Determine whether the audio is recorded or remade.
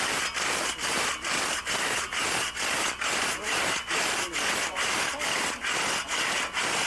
recorded